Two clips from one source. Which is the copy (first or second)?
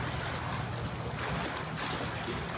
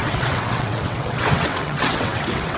second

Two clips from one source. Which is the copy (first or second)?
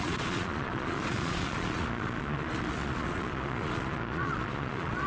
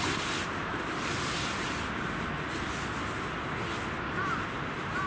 first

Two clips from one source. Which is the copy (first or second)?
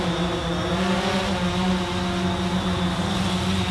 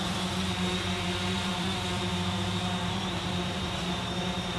second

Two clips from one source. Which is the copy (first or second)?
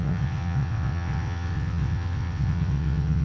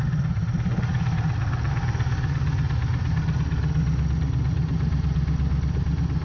first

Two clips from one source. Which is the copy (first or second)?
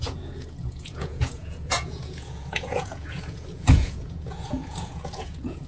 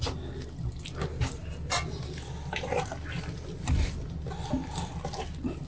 first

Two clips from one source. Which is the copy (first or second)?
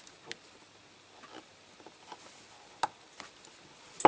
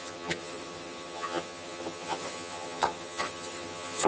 second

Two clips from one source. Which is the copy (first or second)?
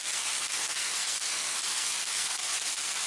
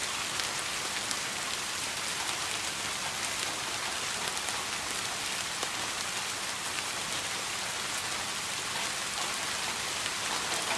first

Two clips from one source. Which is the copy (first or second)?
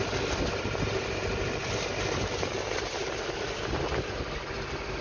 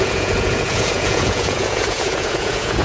second